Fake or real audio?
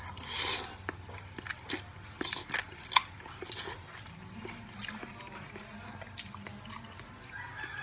real